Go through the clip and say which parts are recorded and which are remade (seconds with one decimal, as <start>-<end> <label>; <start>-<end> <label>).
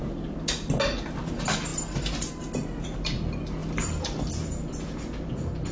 0.0-1.7 recorded; 1.7-2.3 remade; 2.3-3.6 recorded; 3.6-4.2 remade; 4.2-5.7 recorded